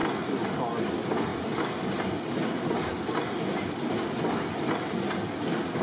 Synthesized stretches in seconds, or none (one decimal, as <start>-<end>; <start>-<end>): none